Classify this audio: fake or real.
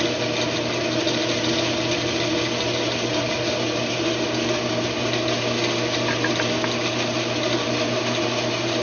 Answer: real